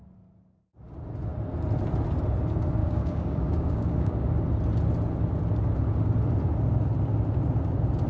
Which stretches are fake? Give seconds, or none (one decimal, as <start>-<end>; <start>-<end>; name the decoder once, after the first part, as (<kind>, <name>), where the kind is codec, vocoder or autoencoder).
2.8-4.3 (codec, DAC)